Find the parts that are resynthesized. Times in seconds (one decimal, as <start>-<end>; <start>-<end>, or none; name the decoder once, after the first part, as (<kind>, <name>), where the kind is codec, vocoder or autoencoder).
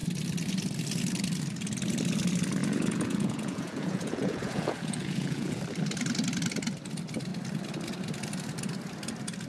2.6-5.6 (vocoder, Vocos)